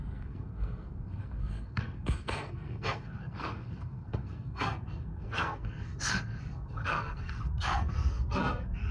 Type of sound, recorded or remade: remade